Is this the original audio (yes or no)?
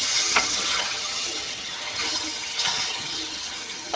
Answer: no